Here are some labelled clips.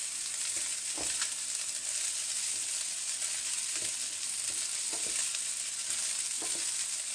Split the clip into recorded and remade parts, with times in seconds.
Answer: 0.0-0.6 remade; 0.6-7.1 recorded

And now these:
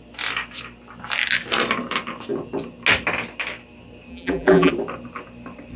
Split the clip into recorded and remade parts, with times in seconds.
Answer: 0.0-4.1 recorded; 4.1-4.7 remade; 4.7-5.8 recorded

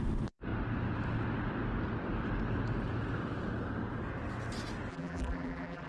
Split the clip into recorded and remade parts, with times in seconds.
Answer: 0.0-4.9 recorded; 4.9-5.9 remade

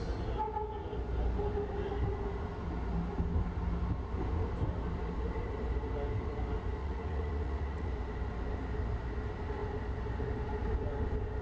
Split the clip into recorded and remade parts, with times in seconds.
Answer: 0.0-6.8 recorded; 6.8-7.9 remade; 7.9-11.4 recorded